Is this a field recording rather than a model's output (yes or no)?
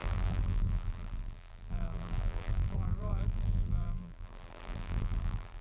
no